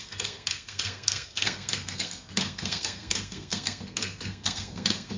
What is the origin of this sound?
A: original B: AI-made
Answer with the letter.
B